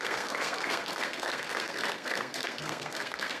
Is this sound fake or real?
fake